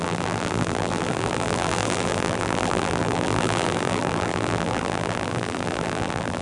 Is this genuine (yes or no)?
no